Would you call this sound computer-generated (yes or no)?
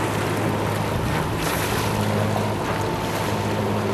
no